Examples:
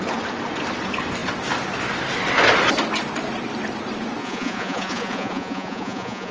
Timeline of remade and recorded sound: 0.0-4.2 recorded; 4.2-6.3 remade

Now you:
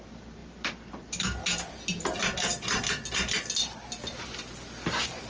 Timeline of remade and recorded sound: 0.0-5.3 recorded

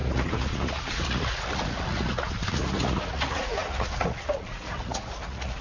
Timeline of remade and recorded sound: 0.0-5.6 remade

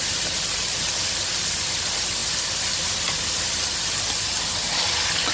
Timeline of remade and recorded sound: 0.0-5.3 recorded